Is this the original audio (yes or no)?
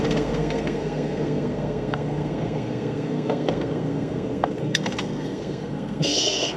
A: no